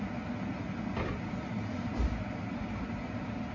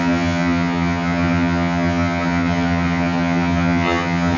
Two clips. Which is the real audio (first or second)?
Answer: first